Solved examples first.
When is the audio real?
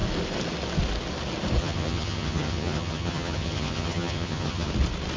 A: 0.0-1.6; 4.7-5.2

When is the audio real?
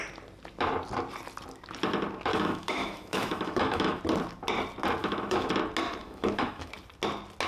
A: 0.0-2.3; 4.0-5.0; 5.5-6.0; 6.7-7.5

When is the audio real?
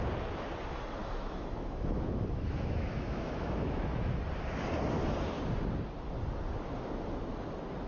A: 0.0-1.0; 4.0-7.9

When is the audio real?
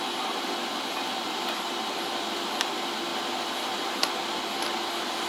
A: 0.0-5.3